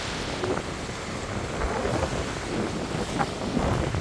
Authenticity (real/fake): real